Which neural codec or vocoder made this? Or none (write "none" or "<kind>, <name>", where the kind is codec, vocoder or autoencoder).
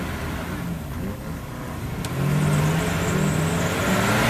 none